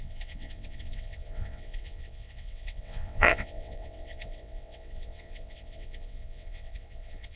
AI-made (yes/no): yes